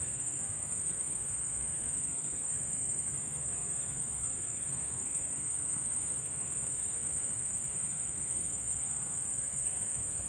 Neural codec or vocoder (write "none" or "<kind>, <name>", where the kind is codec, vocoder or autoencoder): codec, SNAC